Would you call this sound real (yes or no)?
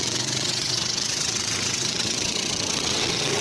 no